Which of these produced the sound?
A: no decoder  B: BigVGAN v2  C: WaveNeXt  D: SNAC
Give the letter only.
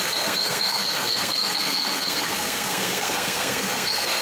D